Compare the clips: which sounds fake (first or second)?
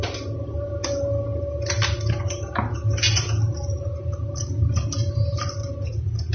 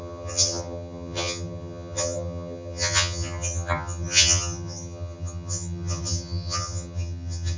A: second